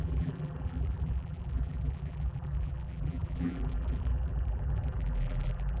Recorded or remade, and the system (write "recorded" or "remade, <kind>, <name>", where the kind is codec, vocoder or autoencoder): remade, vocoder, BigVGAN v2